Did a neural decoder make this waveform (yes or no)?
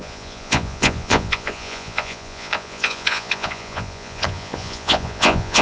yes